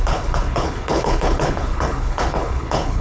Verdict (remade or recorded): remade